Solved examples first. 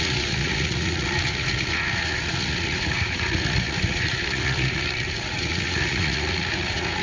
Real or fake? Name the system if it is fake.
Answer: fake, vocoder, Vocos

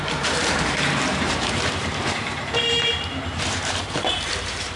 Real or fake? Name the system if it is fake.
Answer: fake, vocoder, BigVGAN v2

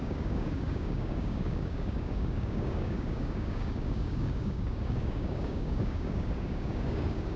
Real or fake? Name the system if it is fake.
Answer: fake, codec, DAC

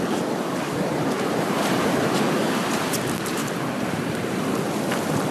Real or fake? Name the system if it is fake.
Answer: real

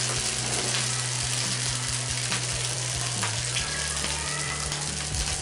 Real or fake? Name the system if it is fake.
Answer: real